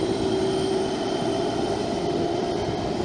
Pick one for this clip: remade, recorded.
remade